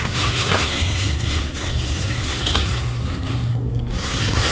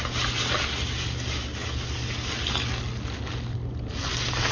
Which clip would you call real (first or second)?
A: second